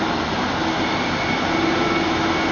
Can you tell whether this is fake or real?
real